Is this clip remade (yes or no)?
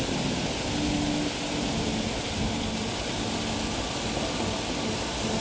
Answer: no